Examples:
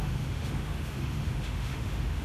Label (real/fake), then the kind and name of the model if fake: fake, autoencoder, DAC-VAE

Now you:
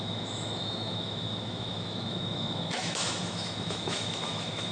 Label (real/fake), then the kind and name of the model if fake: fake, autoencoder, DAC-VAE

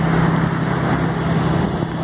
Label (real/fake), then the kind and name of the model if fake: real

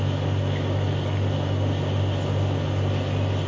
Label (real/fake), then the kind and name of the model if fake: real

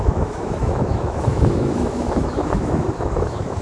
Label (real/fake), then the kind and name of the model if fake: fake, autoencoder, DAC-VAE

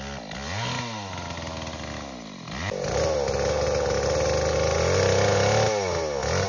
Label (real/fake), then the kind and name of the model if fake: real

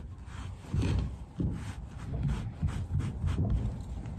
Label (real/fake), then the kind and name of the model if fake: real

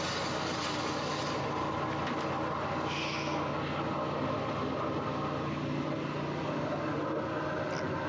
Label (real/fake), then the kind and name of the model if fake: real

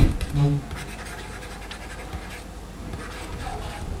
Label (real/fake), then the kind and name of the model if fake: real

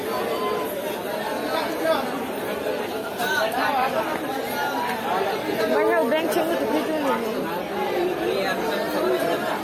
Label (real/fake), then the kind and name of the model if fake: real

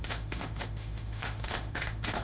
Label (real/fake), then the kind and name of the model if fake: fake, autoencoder, DAC-VAE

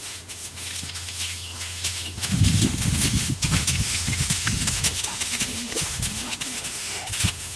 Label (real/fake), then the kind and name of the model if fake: fake, autoencoder, DAC-VAE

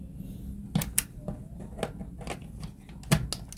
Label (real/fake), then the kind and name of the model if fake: real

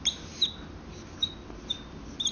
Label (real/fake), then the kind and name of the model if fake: real